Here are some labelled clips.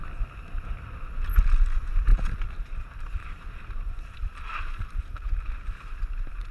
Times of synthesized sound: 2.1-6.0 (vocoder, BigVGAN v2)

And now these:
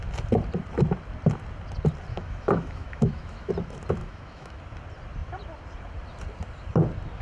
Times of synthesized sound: 2.1-3.5 (autoencoder, DAC-VAE); 4.0-4.6

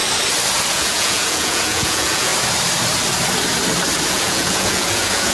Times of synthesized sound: 0.7-2.3 (vocoder, Vocos); 4.1-5.3

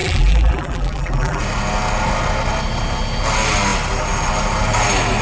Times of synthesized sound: 0.0-1.4 (vocoder, BigVGAN v2)

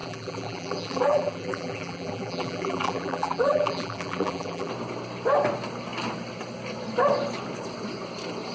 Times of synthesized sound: 0.0-4.7 (vocoder, BigVGAN v2)

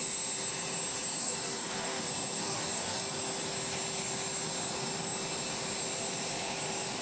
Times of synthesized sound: 1.2-2.0 (codec, DAC); 2.4-3.1

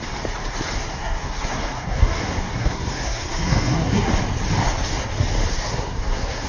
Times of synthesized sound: 0.9-4.1 (codec, SNAC); 5.5-6.5